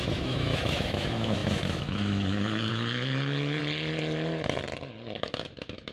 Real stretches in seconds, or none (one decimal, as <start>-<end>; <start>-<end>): 3.6-5.2